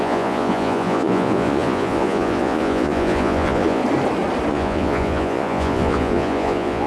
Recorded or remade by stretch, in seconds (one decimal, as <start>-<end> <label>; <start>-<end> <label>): 0.0-3.8 remade; 3.8-4.5 recorded; 4.5-6.9 remade